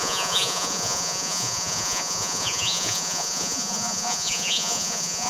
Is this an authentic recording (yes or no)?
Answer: no